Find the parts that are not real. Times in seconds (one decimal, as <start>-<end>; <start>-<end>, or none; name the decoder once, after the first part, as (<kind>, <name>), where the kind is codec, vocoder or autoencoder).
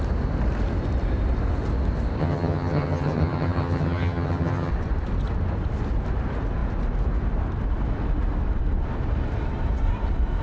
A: 2.2-4.7 (vocoder, HiFi-GAN)